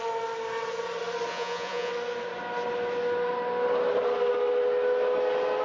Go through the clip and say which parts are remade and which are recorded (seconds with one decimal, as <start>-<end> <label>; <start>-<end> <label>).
0.0-1.3 recorded; 1.3-1.9 remade; 1.9-5.6 recorded